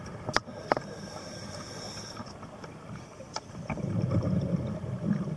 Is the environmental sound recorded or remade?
recorded